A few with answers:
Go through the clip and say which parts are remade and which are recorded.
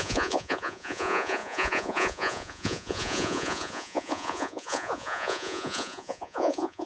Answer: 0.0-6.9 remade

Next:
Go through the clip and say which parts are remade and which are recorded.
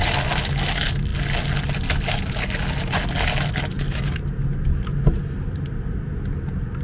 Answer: 0.0-6.8 recorded